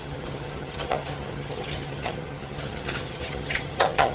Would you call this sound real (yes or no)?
no